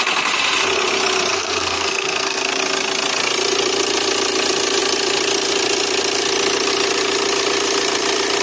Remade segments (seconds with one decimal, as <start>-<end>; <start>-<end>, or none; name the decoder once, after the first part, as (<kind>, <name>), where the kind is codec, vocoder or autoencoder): 1.3-2.6 (codec, SNAC)